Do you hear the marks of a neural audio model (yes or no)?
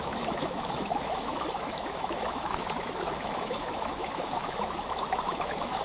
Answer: yes